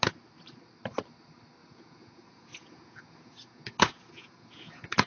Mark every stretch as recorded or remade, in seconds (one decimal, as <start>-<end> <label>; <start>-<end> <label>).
0.0-1.6 recorded; 1.6-5.1 remade